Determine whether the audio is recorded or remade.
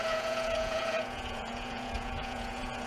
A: remade